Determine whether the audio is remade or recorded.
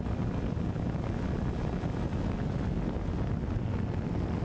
recorded